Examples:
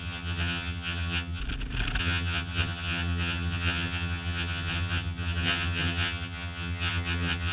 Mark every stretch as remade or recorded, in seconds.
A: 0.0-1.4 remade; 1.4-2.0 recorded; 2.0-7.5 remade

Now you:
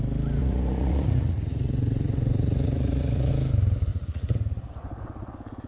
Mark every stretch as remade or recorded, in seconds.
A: 0.0-0.4 recorded; 0.4-3.3 remade; 3.3-3.9 recorded; 3.9-4.7 remade; 4.7-5.7 recorded

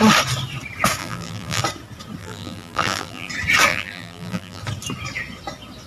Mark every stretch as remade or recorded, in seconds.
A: 0.0-1.0 recorded; 1.0-1.6 remade; 1.6-2.2 recorded; 2.2-3.3 remade; 3.3-3.7 recorded; 3.7-4.6 remade; 4.6-5.9 recorded

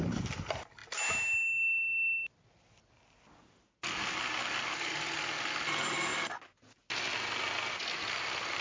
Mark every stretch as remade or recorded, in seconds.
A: 0.0-8.6 recorded

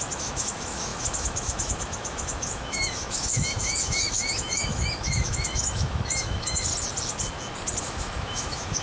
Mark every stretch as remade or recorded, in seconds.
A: 0.0-6.7 remade; 6.7-7.8 recorded; 7.8-8.8 remade

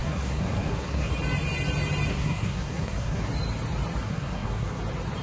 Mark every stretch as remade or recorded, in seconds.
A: 0.0-1.1 remade; 1.1-2.1 recorded; 2.1-3.3 remade; 3.3-4.0 recorded; 4.0-4.8 remade; 4.8-5.2 recorded